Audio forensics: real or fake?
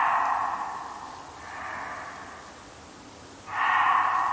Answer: real